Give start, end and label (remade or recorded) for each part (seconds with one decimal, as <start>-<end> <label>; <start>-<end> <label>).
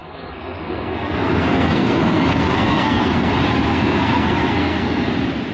0.0-3.3 remade; 3.3-3.7 recorded; 3.7-5.1 remade; 5.1-5.5 recorded